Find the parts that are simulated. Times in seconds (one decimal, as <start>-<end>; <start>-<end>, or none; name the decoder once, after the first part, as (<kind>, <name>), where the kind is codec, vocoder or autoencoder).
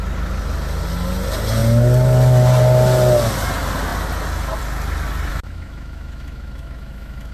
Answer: 5.3-7.3 (autoencoder, DAC-VAE)